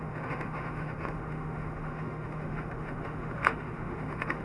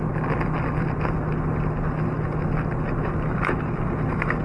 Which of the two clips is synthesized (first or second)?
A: first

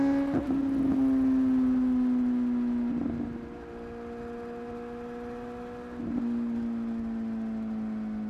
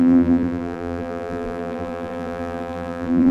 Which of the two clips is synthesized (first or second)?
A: second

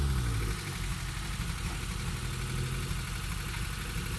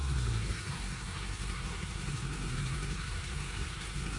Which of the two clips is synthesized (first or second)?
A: second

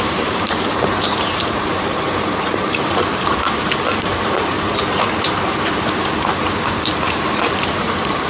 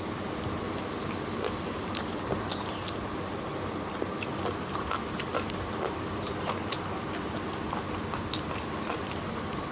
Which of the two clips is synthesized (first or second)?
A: first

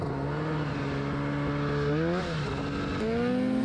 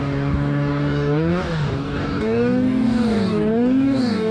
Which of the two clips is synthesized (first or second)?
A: second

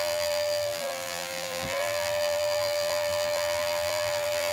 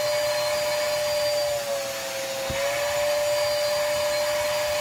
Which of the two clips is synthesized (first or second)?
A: first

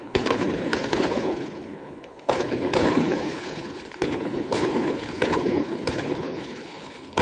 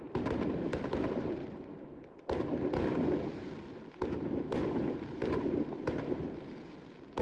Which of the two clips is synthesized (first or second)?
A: first